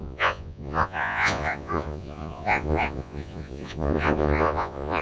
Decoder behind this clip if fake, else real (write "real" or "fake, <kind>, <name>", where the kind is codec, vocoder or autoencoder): fake, vocoder, Vocos